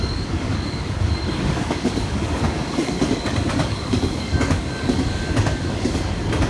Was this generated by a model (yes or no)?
yes